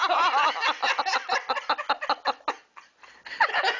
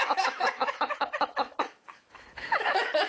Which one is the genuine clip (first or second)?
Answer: first